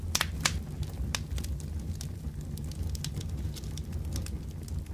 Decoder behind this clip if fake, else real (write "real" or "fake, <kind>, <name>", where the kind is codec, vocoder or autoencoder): real